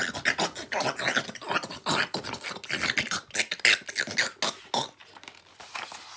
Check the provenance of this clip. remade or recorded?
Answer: recorded